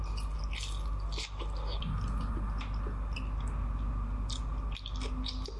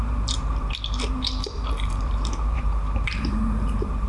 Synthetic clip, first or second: second